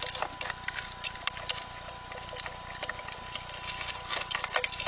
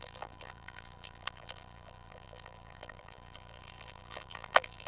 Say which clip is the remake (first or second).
second